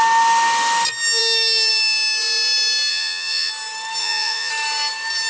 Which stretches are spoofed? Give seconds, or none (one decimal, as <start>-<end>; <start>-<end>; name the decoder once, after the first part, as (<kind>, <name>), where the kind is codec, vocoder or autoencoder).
2.9-3.5 (vocoder, Vocos); 4.0-4.5